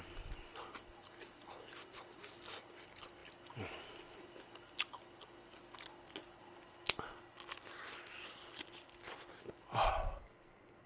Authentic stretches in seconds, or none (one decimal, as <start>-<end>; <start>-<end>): 0.0-9.9